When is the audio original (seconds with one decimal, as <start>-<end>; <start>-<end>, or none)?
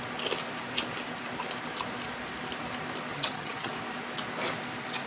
0.0-3.1; 3.7-5.1